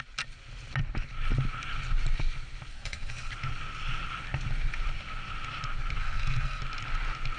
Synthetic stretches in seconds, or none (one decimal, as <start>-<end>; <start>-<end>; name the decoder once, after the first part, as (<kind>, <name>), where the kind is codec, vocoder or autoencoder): 2.7-3.3 (codec, SNAC); 6.0-6.6